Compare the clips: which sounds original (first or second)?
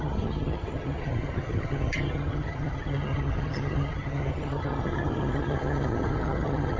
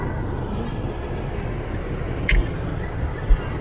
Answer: second